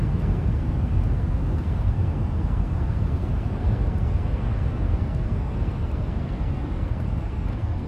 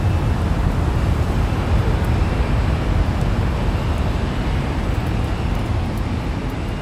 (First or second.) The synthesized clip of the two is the first